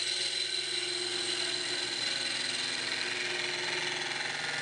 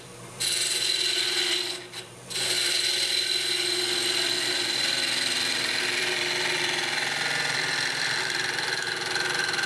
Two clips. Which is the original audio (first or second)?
first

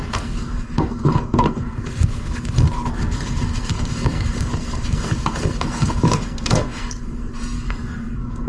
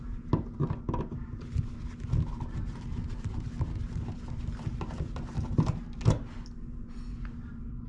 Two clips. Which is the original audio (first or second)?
second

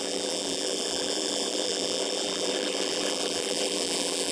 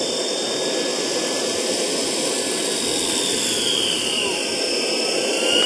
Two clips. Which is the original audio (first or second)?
second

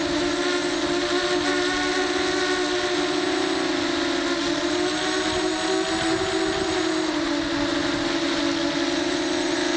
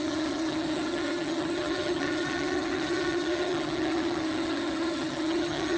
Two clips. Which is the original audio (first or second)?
first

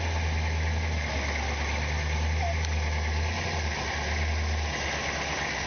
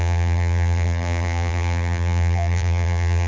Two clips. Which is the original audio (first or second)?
first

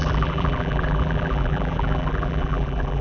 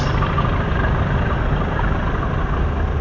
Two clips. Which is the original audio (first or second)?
second